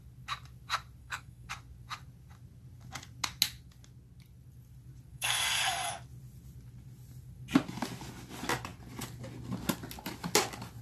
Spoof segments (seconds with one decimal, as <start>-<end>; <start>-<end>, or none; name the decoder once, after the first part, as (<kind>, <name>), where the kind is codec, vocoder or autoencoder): 1.0-1.5 (codec, SNAC); 5.1-5.9